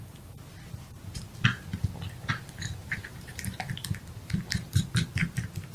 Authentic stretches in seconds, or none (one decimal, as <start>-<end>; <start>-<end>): 0.0-2.8; 3.7-5.7